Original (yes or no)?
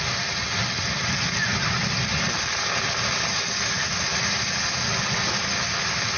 yes